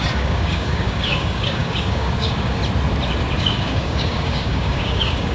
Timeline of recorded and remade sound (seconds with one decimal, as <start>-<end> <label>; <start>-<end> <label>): 0.0-2.6 remade; 2.6-3.4 recorded; 3.4-5.3 remade